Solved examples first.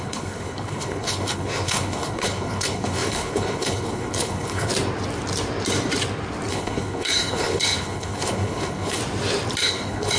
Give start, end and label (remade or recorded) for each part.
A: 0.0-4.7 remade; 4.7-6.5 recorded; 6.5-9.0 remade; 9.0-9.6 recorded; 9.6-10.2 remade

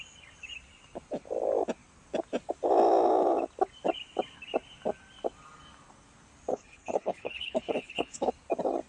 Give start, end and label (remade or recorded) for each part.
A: 0.0-6.5 recorded; 6.5-8.3 remade; 8.3-8.9 recorded

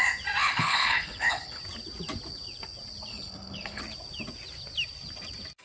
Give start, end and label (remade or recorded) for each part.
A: 0.0-0.4 recorded; 0.4-1.6 remade; 1.6-3.1 recorded; 3.1-3.8 remade; 3.8-5.6 recorded

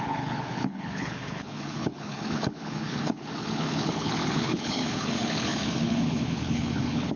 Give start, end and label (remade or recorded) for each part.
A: 0.0-7.2 remade

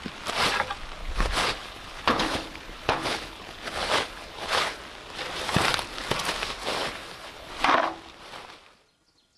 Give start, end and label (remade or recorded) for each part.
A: 0.0-1.0 recorded; 1.0-4.8 remade; 4.8-6.8 recorded; 6.8-7.5 remade; 7.5-9.4 recorded

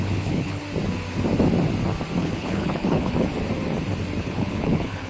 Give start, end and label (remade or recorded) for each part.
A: 0.0-0.6 remade; 0.6-2.2 recorded; 2.2-3.3 remade; 3.3-4.2 recorded; 4.2-5.1 remade